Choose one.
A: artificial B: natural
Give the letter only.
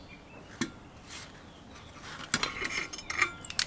B